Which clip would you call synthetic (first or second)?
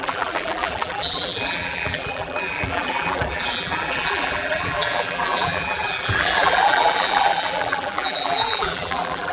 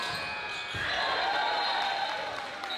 first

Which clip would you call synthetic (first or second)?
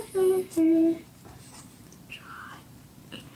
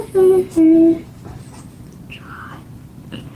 first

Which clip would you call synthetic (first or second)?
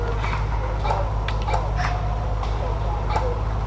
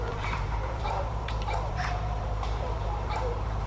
second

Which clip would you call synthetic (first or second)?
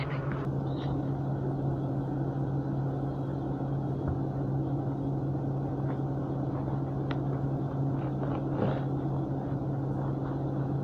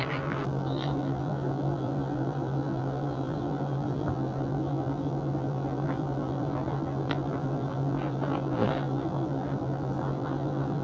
second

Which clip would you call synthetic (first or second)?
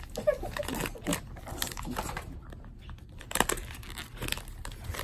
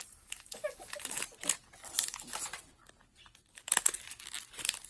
first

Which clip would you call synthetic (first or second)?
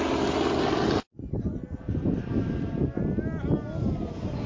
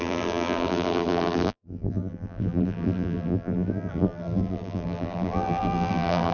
second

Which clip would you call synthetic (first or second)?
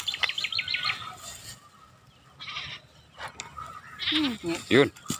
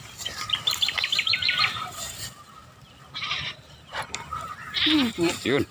second